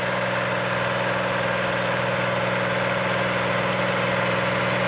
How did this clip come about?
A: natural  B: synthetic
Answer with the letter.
A